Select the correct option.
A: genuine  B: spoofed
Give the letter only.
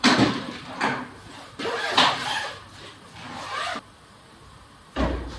A